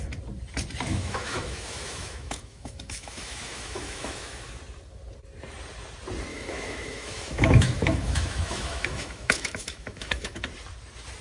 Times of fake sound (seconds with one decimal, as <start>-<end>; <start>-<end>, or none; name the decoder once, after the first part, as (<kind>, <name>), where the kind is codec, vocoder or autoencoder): 0.9-4.6 (autoencoder, DAC-VAE); 6.3-10.4